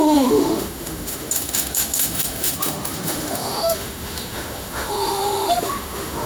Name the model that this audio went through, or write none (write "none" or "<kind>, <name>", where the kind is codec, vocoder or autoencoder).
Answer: autoencoder, DAC-VAE